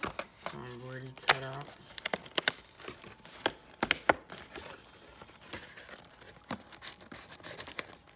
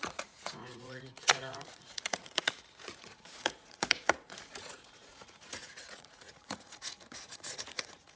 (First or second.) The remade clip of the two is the second